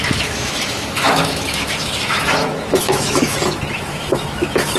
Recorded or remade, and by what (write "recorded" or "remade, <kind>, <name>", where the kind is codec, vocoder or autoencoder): remade, autoencoder, DAC-VAE